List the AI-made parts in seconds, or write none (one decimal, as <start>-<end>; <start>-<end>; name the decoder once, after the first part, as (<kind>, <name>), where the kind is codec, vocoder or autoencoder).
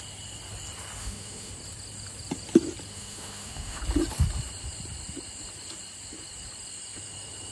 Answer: 1.0-1.5 (autoencoder, DAC-VAE); 2.9-3.8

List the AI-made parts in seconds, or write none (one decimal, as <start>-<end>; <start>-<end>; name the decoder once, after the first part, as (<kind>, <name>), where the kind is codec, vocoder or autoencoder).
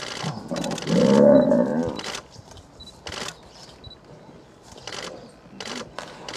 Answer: 1.7-5.3 (vocoder, BigVGAN v2)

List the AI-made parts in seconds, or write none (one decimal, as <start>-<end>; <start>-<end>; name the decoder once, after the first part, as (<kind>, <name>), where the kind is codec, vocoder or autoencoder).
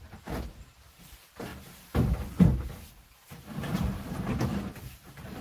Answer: 0.0-1.5 (vocoder, BigVGAN v2); 4.7-5.4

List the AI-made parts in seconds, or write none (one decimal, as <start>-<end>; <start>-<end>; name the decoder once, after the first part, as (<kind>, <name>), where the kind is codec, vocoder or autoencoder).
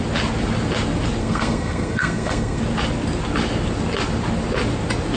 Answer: 1.2-2.6 (codec, SNAC)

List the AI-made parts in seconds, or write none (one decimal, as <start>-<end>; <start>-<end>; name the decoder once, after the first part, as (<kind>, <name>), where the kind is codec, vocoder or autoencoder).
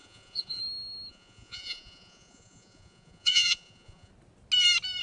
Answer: 0.0-0.6 (vocoder, Vocos); 1.1-4.1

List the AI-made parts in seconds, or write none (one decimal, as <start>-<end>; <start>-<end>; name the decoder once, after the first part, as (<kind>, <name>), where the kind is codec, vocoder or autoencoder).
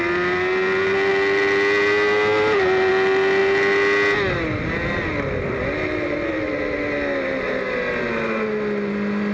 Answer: none